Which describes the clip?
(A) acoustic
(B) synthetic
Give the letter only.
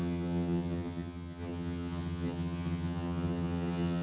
B